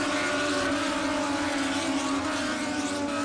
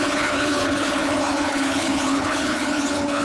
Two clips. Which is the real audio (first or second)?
first